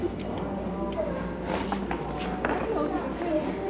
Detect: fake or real real